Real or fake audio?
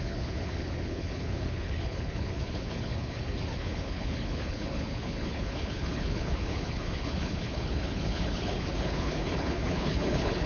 fake